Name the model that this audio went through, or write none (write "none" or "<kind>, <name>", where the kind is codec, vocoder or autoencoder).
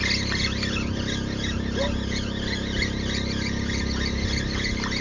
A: none